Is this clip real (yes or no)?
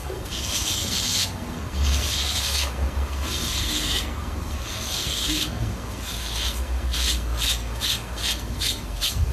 no